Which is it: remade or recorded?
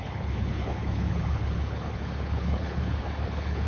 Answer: remade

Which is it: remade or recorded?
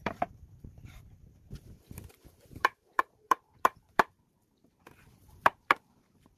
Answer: remade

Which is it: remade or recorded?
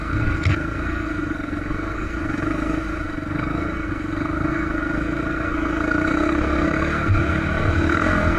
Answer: remade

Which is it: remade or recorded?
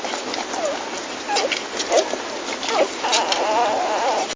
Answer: recorded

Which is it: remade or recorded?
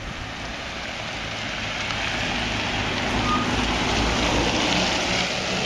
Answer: recorded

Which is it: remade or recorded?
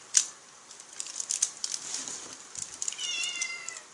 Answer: remade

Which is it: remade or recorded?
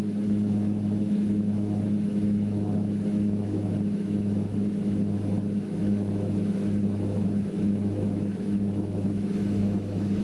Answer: remade